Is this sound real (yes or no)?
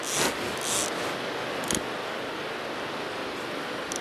yes